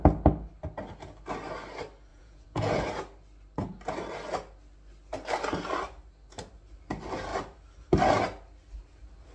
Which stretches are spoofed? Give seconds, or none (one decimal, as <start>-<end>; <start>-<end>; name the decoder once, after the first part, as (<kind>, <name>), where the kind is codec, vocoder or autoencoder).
2.1-2.8 (vocoder, Vocos)